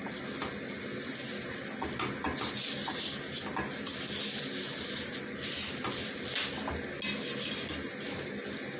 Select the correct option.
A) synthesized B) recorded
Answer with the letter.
B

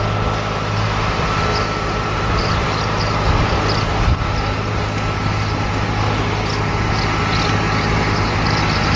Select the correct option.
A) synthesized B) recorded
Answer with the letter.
B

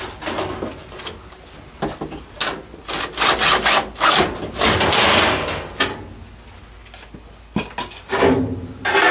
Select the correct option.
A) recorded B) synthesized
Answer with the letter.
A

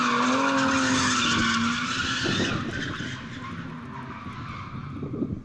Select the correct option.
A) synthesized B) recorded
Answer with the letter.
B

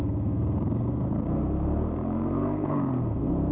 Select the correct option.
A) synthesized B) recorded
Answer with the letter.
A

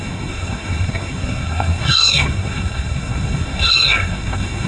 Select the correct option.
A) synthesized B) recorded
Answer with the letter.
A